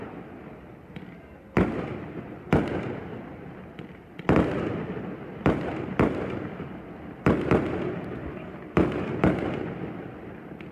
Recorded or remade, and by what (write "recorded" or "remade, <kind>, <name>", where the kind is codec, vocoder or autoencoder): recorded